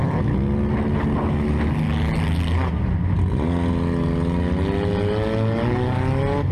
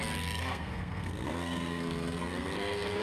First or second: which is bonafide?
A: first